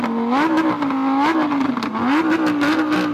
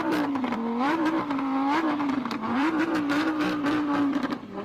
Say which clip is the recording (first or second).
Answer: first